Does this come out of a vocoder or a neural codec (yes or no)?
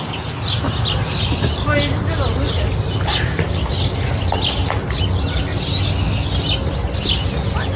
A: no